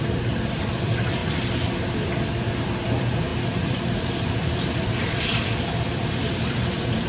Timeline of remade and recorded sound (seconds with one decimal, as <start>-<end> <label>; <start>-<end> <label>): 0.0-7.1 remade